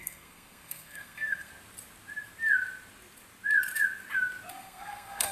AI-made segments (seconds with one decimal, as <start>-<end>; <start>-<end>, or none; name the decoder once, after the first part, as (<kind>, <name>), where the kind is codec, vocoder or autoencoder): 0.0-1.5 (codec, SNAC); 4.5-5.3